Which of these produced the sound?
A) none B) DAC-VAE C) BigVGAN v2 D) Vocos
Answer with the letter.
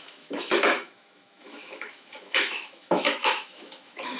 B